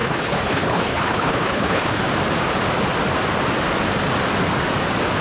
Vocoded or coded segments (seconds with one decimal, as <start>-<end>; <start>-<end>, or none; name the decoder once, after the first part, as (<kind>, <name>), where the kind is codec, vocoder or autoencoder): 0.0-2.0 (codec, HILCodec)